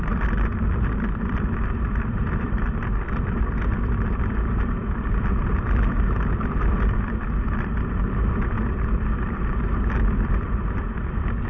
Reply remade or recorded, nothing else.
remade